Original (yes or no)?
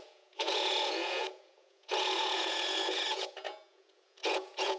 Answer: no